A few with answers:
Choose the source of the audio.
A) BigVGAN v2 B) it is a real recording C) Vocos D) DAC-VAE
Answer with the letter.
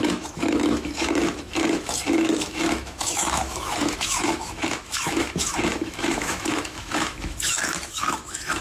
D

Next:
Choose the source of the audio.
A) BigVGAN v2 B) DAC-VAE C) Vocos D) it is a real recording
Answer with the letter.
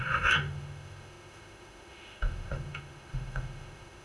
B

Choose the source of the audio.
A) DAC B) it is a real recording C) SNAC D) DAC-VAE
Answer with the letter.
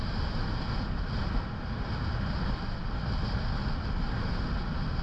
B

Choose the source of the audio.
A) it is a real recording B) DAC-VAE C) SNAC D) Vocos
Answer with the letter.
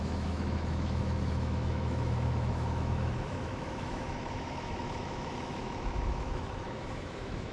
B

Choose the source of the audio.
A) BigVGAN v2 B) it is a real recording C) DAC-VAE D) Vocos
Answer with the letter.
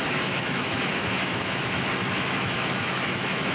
C